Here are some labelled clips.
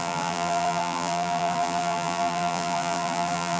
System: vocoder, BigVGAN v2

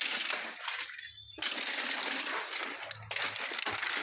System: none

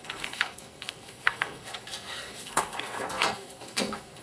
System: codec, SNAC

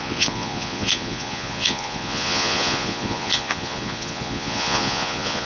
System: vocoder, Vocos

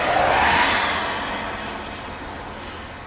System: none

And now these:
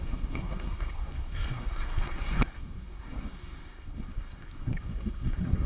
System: codec, SNAC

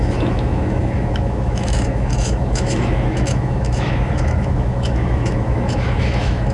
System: autoencoder, DAC-VAE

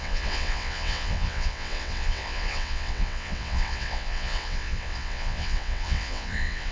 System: vocoder, WaveNeXt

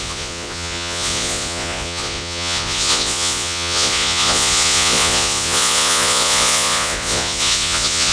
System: vocoder, Vocos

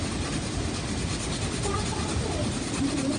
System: none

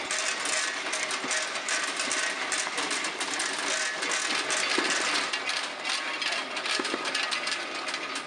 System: none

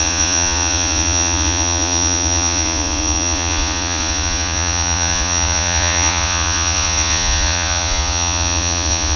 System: vocoder, Vocos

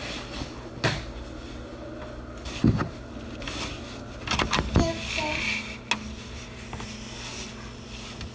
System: none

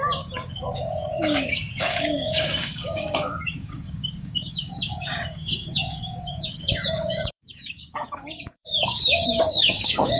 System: codec, DAC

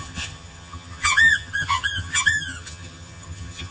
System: vocoder, HiFi-GAN